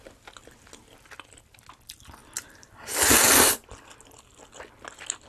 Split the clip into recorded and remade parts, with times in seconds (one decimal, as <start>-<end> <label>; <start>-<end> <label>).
0.0-2.2 recorded; 2.2-3.2 remade; 3.2-5.3 recorded